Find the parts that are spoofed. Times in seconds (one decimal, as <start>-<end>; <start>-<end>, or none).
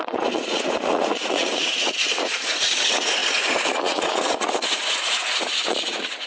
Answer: 0.0-6.3